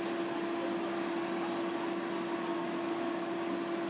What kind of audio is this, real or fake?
real